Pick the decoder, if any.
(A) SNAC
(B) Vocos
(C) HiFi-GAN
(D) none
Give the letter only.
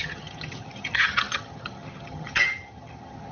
C